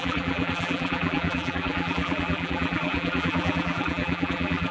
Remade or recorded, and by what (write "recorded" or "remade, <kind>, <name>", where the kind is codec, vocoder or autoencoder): remade, vocoder, BigVGAN v2